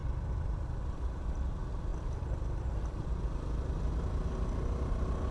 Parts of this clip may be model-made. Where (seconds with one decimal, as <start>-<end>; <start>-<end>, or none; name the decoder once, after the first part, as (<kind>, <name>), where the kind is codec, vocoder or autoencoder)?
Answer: 0.0-1.5 (vocoder, BigVGAN v2)